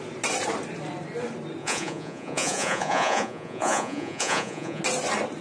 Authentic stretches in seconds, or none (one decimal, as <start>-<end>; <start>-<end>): 0.0-1.6; 4.8-5.4